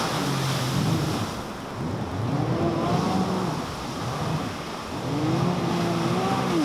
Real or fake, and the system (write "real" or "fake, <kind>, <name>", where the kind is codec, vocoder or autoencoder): real